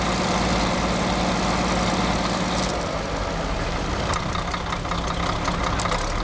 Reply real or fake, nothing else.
real